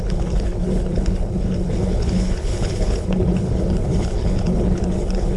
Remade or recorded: remade